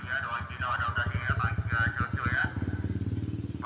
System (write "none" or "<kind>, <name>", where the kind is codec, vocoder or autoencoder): none